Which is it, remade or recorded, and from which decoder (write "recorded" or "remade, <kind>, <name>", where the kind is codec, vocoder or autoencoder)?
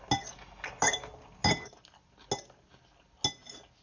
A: recorded